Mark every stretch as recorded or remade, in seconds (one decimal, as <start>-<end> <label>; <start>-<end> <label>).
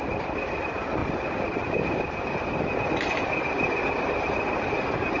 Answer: 0.0-5.2 recorded